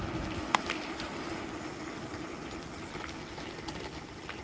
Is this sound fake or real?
real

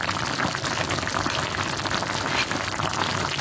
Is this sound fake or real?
real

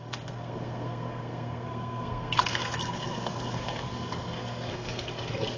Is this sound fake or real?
fake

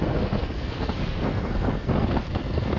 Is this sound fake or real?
fake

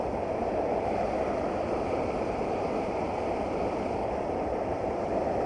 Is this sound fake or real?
real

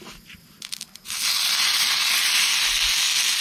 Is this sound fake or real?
real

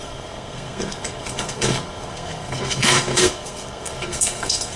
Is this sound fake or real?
fake